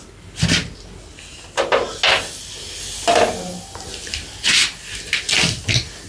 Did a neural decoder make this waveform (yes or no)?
no